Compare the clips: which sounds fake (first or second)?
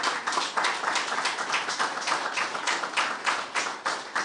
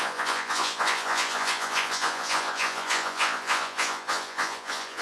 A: second